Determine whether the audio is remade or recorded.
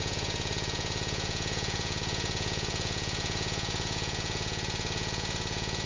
remade